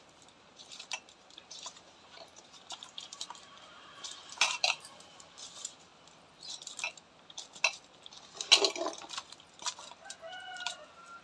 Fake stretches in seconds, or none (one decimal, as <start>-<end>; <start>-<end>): 0.0-5.9; 10.4-11.2